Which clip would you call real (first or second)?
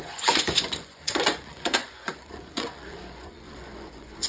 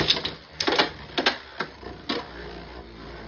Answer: second